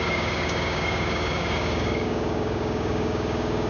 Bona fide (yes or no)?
no